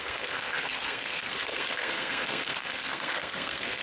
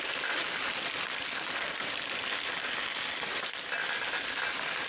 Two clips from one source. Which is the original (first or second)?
second